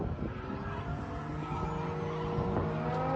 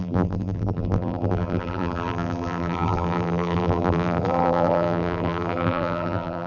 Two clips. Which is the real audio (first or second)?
first